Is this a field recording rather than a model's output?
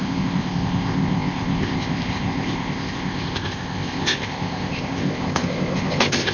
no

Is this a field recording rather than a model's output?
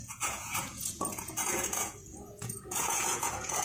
no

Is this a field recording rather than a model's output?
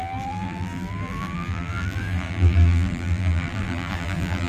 no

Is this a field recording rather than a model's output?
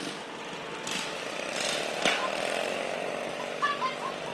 yes